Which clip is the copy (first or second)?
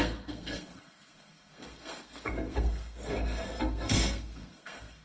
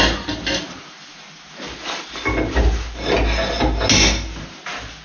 first